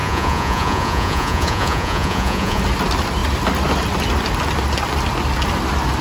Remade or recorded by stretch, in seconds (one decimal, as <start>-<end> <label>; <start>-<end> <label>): 0.0-2.6 remade; 2.6-6.0 recorded